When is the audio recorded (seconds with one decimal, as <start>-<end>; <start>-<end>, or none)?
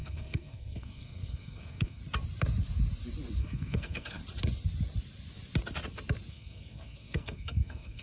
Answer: 2.0-3.4; 4.2-6.3